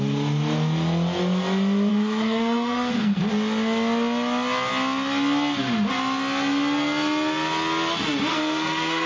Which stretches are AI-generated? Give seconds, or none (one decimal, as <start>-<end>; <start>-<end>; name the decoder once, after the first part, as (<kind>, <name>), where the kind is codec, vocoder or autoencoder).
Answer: 1.9-3.2 (codec, SNAC); 8.3-9.1